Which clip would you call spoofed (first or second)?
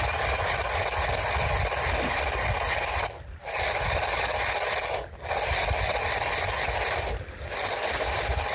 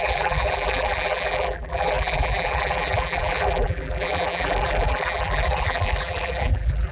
second